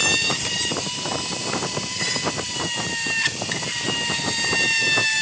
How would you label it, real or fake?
fake